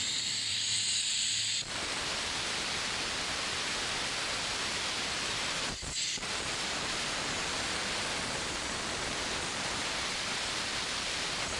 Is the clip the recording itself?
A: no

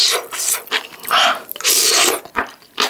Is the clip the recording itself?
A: yes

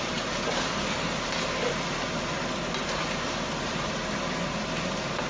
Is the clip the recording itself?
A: yes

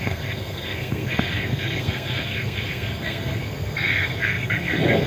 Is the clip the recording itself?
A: no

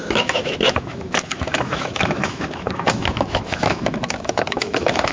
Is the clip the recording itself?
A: no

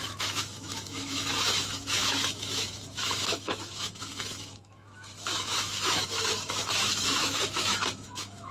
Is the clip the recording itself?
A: no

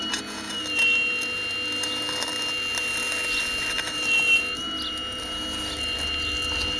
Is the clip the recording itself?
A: yes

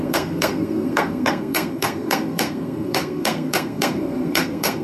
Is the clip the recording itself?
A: no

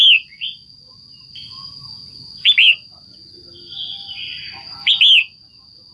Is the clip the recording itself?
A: yes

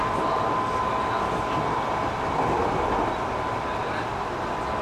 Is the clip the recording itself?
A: yes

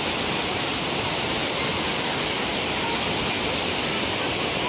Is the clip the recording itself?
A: yes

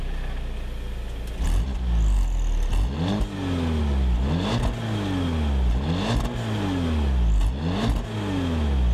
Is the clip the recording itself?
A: yes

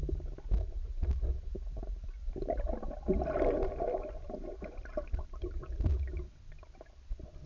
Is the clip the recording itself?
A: yes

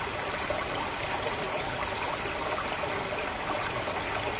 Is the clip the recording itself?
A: yes